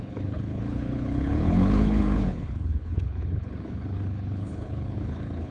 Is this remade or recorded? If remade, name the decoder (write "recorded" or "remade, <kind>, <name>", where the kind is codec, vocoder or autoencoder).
remade, codec, HILCodec